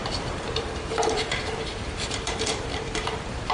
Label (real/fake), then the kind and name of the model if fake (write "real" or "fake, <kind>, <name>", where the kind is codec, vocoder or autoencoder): fake, vocoder, BigVGAN v2